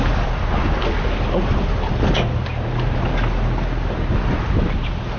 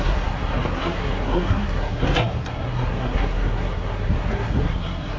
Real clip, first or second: first